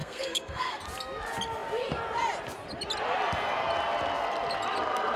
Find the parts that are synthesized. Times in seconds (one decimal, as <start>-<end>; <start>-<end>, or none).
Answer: 0.0-0.8

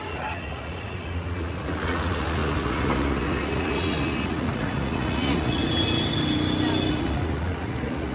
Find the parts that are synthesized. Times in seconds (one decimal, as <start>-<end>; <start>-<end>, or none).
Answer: 0.0-5.6; 6.9-8.1

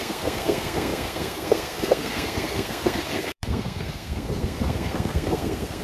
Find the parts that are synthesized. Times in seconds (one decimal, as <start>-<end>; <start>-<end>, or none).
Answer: 0.0-5.8